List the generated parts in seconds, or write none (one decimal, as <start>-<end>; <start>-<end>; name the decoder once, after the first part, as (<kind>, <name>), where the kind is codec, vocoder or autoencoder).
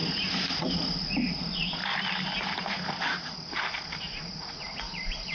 0.6-1.8 (vocoder, Vocos); 4.1-5.3